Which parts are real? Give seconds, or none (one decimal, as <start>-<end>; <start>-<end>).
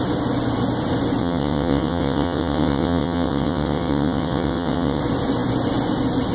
0.0-1.2; 5.0-6.3